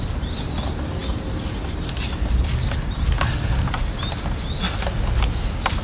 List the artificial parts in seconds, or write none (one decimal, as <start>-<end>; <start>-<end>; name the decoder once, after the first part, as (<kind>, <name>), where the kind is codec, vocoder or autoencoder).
none